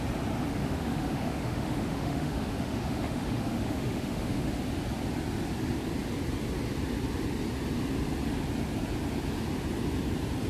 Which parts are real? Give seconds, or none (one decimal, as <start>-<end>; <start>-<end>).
0.0-0.6; 4.5-10.5

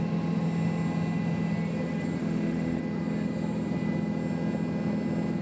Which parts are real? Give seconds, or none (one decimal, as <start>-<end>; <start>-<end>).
0.0-2.2; 2.8-5.4

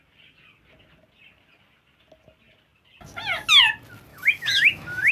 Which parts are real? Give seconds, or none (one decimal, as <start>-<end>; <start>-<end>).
0.0-4.1

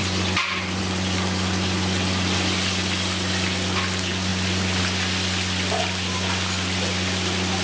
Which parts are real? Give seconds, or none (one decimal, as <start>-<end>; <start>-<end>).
0.0-7.6

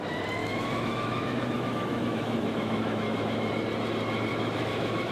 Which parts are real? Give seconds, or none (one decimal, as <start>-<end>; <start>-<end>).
0.0-0.4; 3.5-4.3

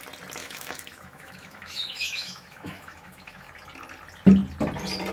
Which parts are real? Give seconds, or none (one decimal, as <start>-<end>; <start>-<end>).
0.0-0.4; 3.5-5.1

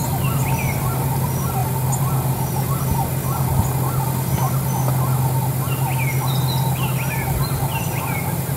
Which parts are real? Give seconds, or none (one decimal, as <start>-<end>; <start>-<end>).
0.0-8.6